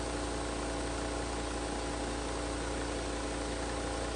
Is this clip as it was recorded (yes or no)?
yes